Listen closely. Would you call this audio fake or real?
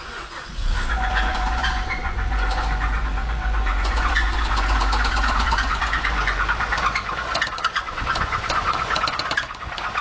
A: fake